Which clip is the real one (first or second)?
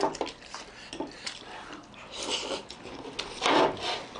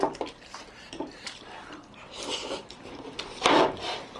first